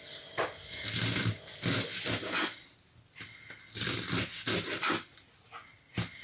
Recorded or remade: recorded